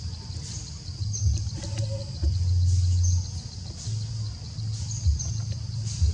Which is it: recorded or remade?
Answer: recorded